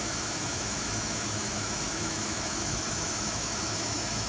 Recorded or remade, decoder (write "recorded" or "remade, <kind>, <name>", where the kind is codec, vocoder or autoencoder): remade, autoencoder, DAC-VAE